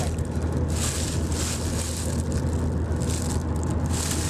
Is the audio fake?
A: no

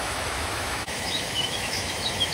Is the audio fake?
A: yes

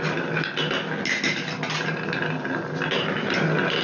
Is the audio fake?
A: no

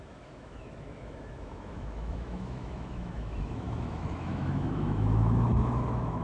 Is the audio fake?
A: yes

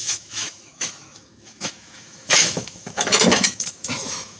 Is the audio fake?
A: yes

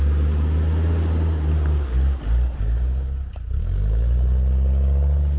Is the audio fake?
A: no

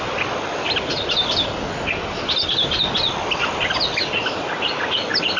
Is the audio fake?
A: no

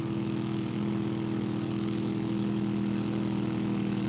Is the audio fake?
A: yes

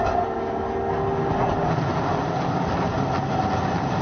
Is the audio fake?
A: no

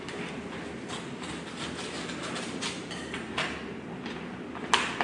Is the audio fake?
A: no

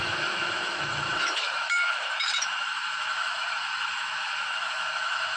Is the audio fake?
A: yes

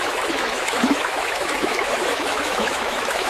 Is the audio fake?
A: yes